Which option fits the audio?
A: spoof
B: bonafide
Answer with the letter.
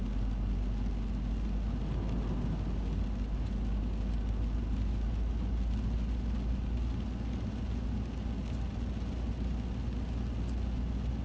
B